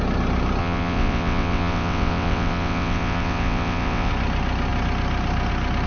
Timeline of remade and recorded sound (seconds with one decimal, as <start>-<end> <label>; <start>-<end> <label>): 0.0-0.6 recorded; 0.6-4.1 remade; 4.1-5.9 recorded

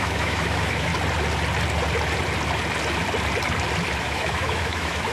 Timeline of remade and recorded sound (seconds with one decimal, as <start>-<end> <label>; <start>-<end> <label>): 0.0-0.9 remade; 0.9-4.0 recorded; 4.0-5.1 remade